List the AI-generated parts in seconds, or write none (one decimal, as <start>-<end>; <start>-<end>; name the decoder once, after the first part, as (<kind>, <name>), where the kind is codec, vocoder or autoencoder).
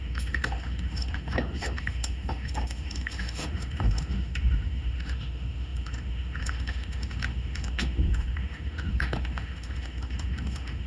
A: 0.0-10.9 (autoencoder, DAC-VAE)